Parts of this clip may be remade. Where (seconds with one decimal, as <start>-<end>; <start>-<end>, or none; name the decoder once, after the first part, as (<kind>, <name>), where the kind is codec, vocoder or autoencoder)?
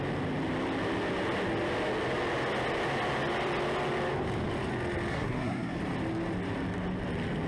5.1-5.8 (codec, SNAC)